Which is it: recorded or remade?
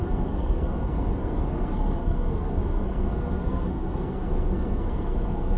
remade